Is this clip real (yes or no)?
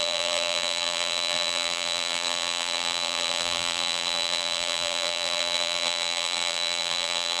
no